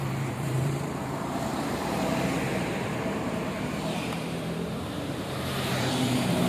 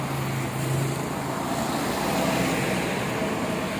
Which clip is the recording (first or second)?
second